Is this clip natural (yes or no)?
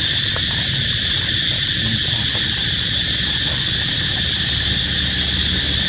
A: no